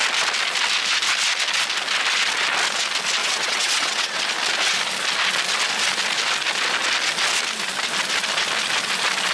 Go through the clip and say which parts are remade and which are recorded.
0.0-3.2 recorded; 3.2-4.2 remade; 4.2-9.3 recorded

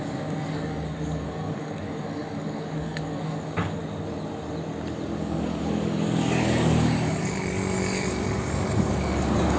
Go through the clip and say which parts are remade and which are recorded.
0.0-3.8 remade; 3.8-5.2 recorded; 5.2-9.6 remade

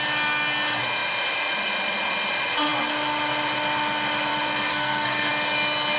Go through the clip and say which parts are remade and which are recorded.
0.0-4.7 recorded; 4.7-5.3 remade; 5.3-6.0 recorded

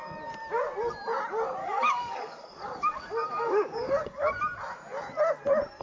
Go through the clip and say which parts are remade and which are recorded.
0.0-1.6 recorded; 1.6-4.3 remade; 4.3-5.8 recorded

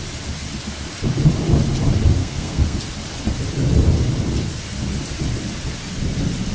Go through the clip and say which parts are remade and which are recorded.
0.0-2.2 recorded; 2.2-2.8 remade; 2.8-6.5 recorded

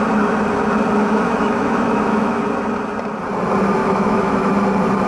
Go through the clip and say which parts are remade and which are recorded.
0.0-1.0 recorded; 1.0-2.4 remade; 2.4-3.8 recorded; 3.8-4.5 remade; 4.5-5.1 recorded